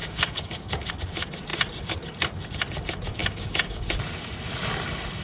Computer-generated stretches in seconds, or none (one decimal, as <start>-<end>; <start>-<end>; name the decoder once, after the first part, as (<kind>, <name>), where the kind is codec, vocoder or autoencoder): 0.0-0.9 (codec, DAC); 3.2-3.9